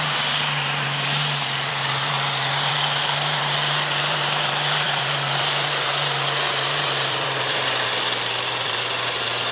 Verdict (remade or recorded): remade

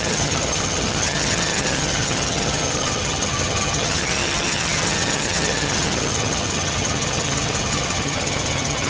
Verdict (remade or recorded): remade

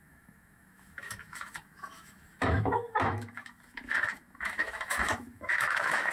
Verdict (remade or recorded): remade